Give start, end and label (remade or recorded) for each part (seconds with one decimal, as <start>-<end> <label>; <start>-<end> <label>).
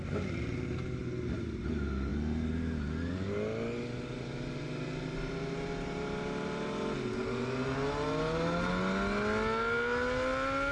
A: 0.0-10.7 recorded